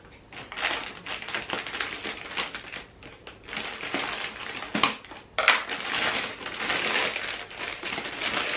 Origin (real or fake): real